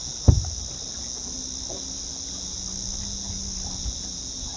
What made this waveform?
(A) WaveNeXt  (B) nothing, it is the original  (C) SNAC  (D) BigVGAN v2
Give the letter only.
B